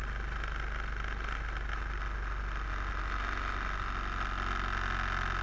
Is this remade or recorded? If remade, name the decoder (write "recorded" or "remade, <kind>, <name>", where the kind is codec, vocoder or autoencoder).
recorded